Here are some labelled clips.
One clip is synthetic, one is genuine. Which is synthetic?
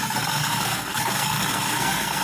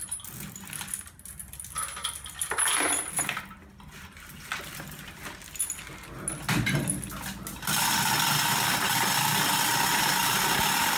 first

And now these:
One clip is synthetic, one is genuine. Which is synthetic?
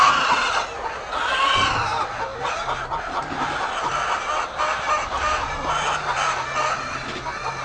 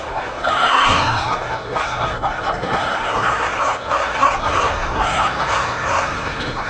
second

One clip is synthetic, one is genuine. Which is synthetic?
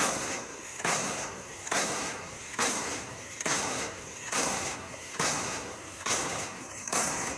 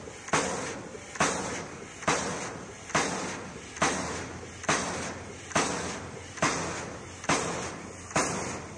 first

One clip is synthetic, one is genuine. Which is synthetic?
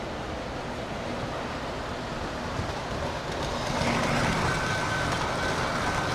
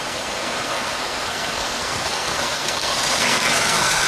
second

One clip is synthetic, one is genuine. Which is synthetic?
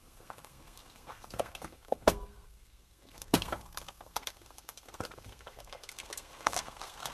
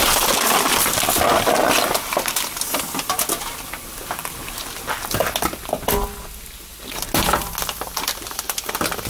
first